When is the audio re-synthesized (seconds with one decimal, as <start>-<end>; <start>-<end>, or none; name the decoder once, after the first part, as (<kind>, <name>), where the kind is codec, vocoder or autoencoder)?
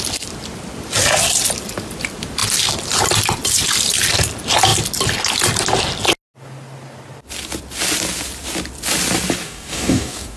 9.4-10.4 (codec, DAC)